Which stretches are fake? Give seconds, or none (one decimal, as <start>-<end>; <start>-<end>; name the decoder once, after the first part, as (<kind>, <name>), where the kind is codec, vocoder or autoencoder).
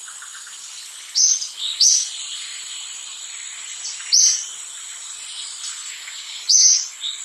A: 0.8-1.9 (codec, HILCodec); 5.7-7.2